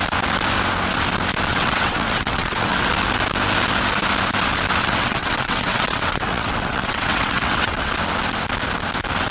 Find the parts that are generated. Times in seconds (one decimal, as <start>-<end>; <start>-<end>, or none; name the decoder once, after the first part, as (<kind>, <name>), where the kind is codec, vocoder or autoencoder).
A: 1.5-2.9 (vocoder, WaveNeXt); 4.8-7.9